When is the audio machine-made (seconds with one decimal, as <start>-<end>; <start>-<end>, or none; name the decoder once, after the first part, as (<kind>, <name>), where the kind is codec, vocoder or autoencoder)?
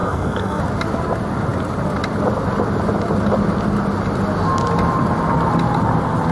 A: 0.0-0.6 (codec, SNAC)